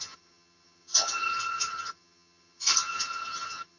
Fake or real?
fake